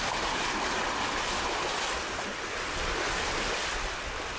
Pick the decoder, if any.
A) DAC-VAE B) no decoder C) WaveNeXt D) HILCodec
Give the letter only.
B